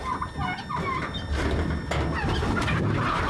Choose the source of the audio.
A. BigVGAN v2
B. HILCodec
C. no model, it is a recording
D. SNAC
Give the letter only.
C